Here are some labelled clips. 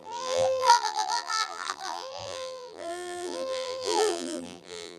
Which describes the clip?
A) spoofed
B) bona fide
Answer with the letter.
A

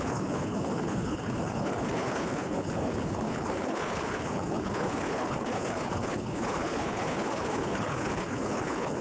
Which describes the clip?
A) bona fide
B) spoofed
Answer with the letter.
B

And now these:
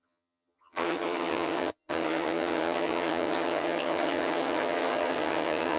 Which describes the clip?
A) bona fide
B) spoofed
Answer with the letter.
B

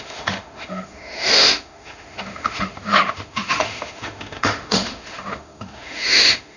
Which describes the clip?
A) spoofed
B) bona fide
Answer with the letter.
A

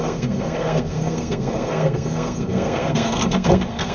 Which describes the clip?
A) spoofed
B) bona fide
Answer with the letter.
A